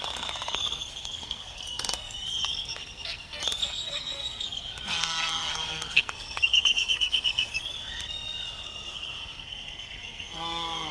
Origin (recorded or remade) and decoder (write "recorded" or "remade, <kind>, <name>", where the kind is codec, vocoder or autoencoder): remade, codec, SNAC